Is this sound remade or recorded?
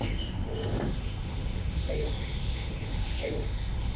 remade